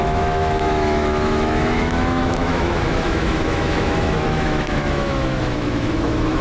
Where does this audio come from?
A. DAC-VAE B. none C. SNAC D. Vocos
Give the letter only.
A